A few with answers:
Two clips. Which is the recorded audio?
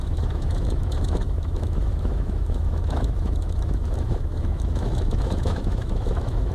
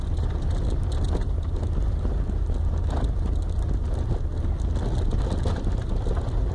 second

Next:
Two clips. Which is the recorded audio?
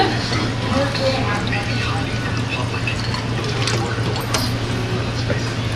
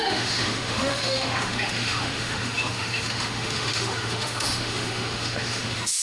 first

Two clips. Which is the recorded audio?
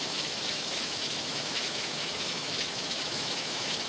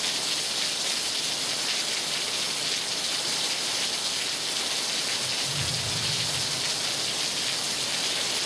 second